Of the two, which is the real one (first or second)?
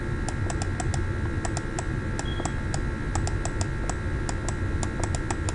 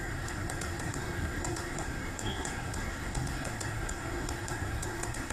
first